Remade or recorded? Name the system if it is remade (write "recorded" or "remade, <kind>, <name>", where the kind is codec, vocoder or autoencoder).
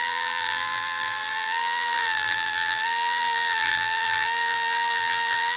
remade, vocoder, BigVGAN v2